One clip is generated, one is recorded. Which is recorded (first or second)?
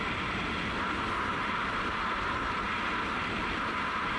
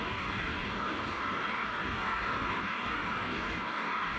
first